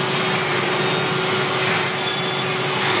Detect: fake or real real